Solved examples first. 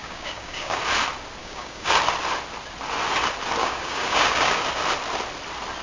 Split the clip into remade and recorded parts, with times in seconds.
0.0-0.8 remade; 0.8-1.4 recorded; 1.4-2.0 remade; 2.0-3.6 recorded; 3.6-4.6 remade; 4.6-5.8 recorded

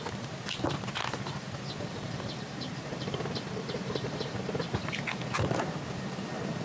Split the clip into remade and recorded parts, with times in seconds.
0.0-1.9 recorded; 1.9-4.9 remade; 4.9-6.6 recorded

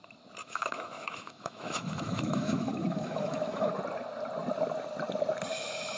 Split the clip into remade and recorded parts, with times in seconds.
0.0-0.4 recorded; 0.4-3.7 remade; 3.7-6.0 recorded

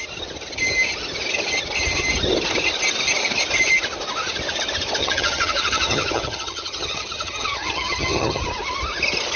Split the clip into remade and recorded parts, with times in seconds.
0.0-5.0 recorded; 5.0-8.4 remade; 8.4-9.4 recorded

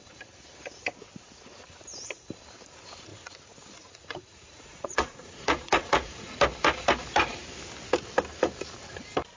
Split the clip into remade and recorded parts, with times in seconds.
0.0-3.1 recorded; 3.1-6.3 remade; 6.3-9.4 recorded

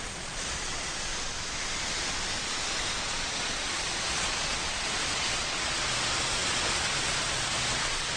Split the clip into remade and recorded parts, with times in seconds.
0.0-1.1 remade; 1.1-3.0 recorded; 3.0-8.2 remade

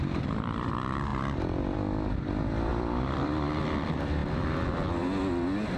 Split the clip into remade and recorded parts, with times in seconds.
0.0-1.1 remade; 1.1-2.1 recorded; 2.1-4.2 remade; 4.2-5.8 recorded

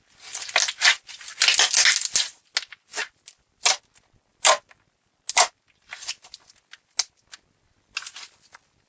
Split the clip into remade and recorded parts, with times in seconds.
0.0-8.9 recorded